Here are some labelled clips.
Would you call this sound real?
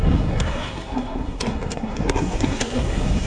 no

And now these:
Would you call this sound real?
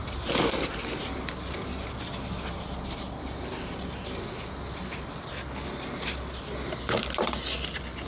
yes